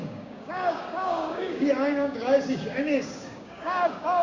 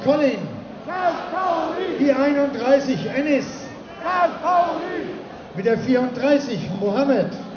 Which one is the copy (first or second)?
first